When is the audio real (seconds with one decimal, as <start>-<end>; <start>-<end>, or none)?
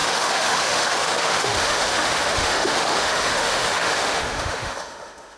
none